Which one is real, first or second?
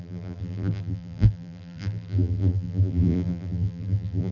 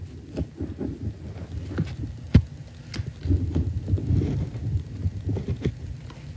second